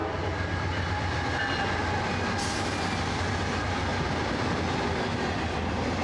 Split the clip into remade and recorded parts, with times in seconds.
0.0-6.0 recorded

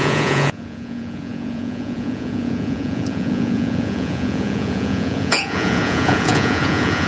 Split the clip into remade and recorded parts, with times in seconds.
0.0-7.1 remade

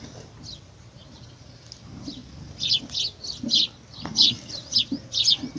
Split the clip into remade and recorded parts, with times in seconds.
0.0-5.6 recorded

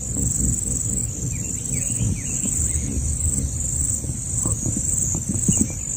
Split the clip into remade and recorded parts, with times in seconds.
0.0-6.0 recorded